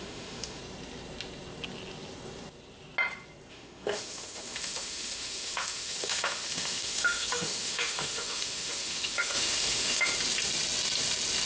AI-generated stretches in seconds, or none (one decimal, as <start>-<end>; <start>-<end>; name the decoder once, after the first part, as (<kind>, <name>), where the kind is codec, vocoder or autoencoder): 0.0-0.6 (autoencoder, DAC-VAE); 3.5-10.1